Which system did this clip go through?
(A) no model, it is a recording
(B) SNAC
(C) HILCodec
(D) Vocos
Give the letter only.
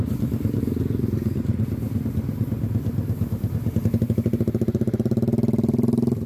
A